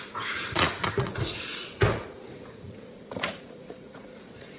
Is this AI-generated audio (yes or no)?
yes